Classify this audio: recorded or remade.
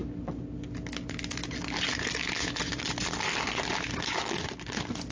recorded